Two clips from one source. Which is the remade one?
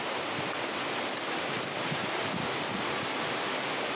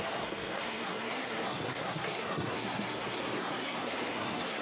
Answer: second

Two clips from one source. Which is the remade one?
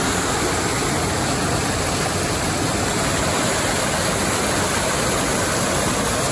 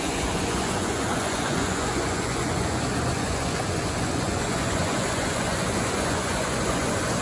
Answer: second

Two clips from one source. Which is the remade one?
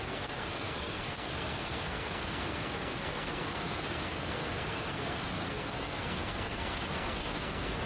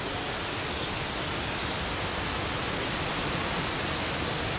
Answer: first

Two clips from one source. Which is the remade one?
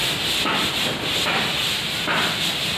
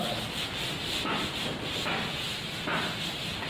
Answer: first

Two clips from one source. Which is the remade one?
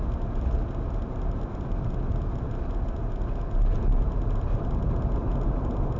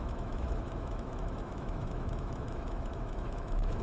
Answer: second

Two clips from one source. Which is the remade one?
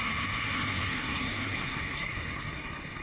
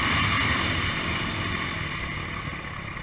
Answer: first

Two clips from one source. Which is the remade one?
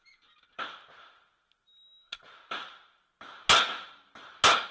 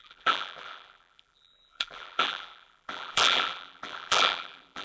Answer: second